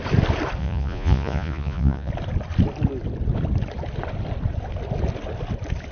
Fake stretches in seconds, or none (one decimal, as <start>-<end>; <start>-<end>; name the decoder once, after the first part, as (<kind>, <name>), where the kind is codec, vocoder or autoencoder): 0.6-2.1 (vocoder, Vocos)